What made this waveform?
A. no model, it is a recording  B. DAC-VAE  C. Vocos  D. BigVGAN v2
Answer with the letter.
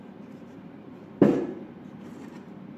D